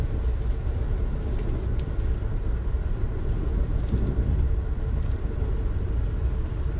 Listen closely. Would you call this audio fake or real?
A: real